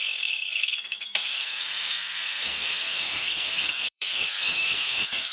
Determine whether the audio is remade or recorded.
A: remade